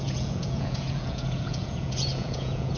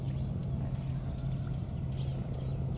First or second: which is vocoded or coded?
first